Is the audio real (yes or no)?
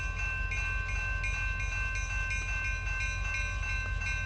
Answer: yes